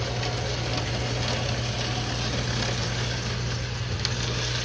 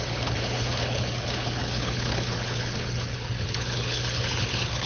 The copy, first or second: second